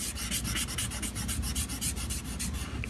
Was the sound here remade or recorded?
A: recorded